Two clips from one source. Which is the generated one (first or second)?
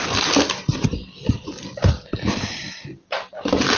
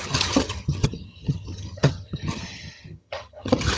second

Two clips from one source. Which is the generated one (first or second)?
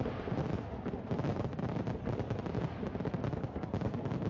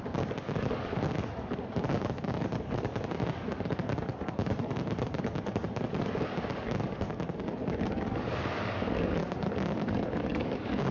second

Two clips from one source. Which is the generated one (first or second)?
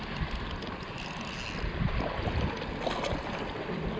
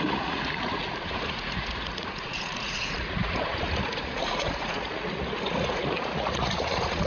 second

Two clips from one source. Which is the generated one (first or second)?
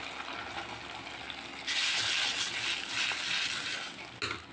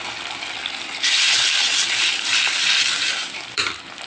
second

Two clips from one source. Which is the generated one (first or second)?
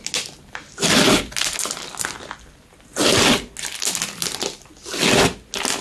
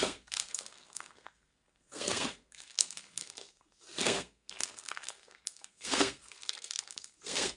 second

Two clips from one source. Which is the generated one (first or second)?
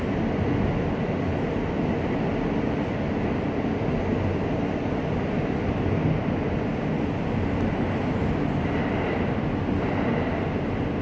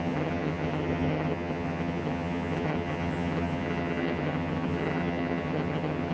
second